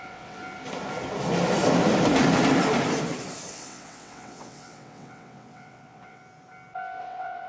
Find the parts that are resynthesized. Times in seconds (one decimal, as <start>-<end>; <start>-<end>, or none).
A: 0.0-0.4; 3.5-6.2; 7.0-7.5